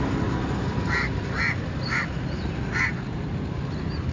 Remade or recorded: recorded